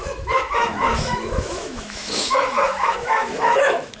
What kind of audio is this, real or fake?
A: fake